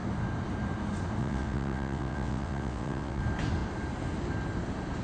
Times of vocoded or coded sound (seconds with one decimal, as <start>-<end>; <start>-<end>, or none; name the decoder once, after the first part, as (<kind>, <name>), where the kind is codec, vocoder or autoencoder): 1.2-3.2 (vocoder, WaveNeXt)